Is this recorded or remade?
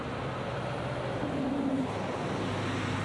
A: recorded